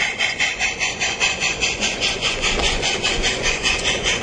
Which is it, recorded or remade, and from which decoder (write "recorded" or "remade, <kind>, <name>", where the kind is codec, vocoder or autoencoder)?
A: remade, vocoder, Vocos